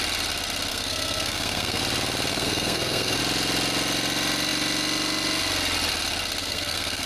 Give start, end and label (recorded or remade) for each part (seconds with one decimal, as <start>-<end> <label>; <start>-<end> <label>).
0.0-0.7 recorded; 0.7-1.8 remade; 1.8-2.3 recorded; 2.3-3.2 remade; 3.2-6.4 recorded; 6.4-7.1 remade

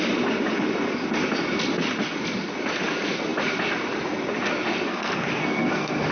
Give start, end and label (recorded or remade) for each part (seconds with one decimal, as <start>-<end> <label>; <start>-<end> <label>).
0.0-4.9 recorded; 4.9-6.1 remade

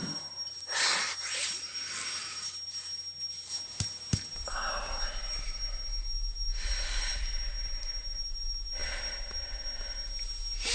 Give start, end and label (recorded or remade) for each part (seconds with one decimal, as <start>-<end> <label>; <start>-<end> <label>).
0.0-10.7 recorded

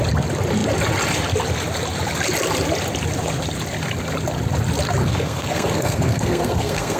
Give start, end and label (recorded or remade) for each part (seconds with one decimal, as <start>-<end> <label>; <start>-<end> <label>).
0.0-5.0 recorded; 5.0-7.0 remade

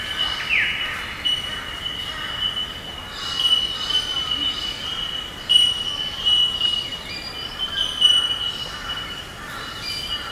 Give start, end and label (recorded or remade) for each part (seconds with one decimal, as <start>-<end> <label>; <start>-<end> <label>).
0.0-10.3 recorded

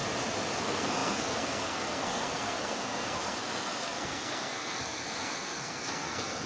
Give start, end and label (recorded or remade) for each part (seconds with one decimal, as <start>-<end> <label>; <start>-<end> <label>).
0.0-0.6 recorded; 0.6-6.5 remade